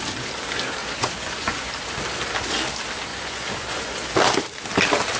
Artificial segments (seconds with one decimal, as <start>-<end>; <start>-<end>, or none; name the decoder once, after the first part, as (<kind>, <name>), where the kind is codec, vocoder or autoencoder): 0.8-1.7 (vocoder, Vocos); 3.1-4.1